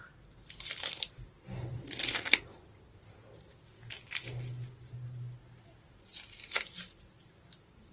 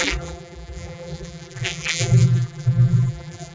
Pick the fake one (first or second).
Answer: second